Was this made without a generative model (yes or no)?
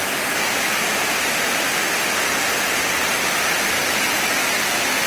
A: yes